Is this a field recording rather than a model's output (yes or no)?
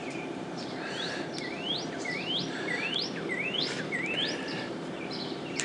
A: no